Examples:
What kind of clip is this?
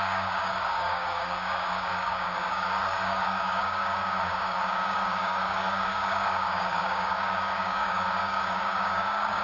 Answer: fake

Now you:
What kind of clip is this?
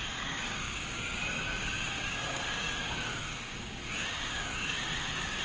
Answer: fake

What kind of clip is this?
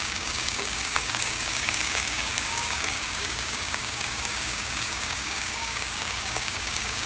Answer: fake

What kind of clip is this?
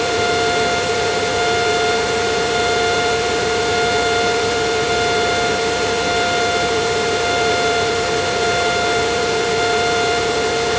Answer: real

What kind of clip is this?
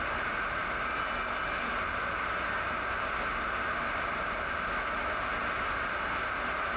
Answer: real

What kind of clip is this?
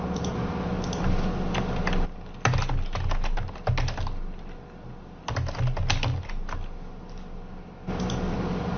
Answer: real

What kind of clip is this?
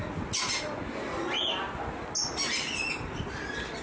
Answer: real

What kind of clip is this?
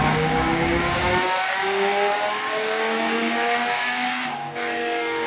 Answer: fake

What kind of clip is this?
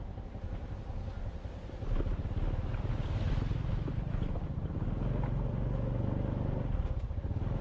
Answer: real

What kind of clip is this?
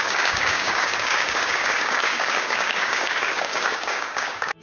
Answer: fake